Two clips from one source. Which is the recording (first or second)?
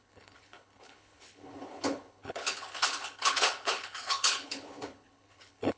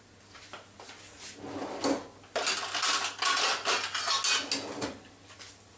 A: second